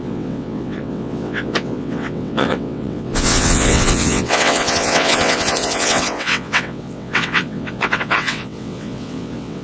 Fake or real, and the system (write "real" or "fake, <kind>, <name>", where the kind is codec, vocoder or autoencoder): fake, vocoder, WaveNeXt